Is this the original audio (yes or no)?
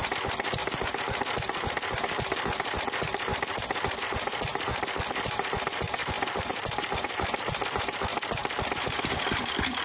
yes